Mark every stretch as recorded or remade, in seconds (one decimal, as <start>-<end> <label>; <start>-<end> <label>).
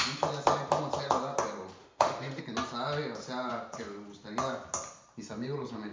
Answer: 0.0-1.8 recorded; 1.8-2.4 remade; 2.4-5.9 recorded